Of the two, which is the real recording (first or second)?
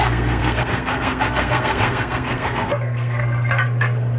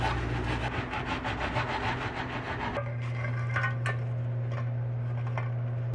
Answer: second